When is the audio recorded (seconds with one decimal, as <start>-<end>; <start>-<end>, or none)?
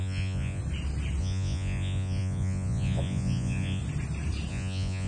0.6-1.2; 3.8-4.5